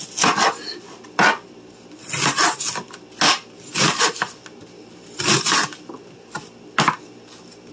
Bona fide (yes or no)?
yes